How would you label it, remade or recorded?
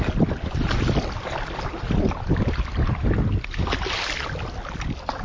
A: recorded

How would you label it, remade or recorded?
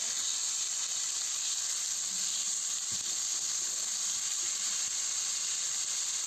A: recorded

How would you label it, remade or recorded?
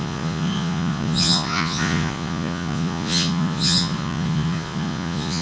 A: remade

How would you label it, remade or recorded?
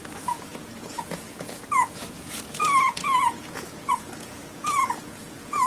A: remade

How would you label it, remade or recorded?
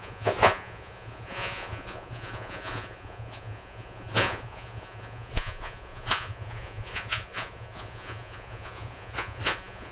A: remade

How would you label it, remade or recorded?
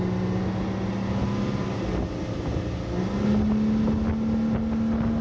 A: recorded